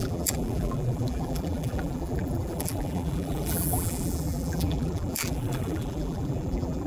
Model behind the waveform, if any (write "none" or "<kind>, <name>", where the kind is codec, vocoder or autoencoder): vocoder, BigVGAN v2